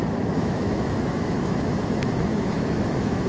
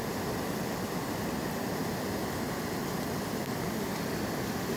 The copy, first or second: first